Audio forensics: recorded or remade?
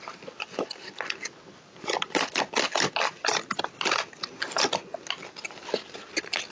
recorded